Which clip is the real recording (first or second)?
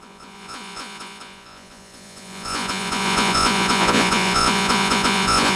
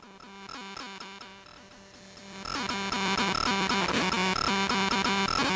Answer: second